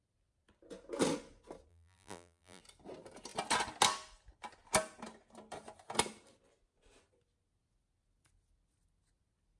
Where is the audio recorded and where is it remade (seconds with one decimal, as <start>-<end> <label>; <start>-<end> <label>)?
0.0-1.7 recorded; 1.7-2.6 remade; 2.6-9.6 recorded